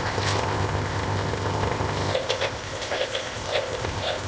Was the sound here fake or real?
fake